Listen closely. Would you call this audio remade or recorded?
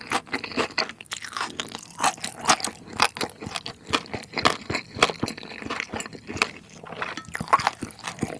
recorded